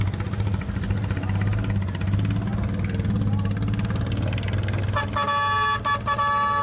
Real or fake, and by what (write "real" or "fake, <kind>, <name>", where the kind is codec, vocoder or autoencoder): real